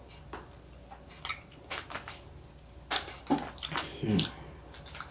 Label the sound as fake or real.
real